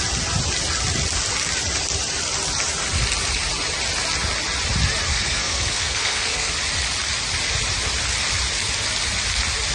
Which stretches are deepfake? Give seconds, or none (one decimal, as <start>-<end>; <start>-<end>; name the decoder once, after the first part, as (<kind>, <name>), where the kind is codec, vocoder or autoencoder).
5.1-6.5 (codec, SNAC)